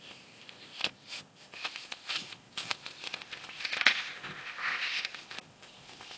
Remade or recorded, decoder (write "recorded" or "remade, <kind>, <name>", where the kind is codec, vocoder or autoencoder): remade, codec, ZipCodec